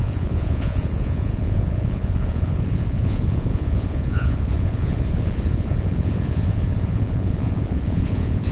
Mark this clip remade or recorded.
remade